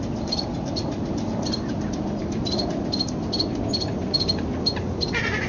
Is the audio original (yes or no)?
yes